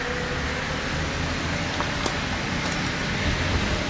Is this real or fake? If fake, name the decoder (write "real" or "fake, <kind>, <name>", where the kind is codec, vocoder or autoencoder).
real